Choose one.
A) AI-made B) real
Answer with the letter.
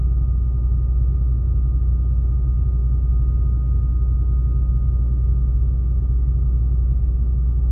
B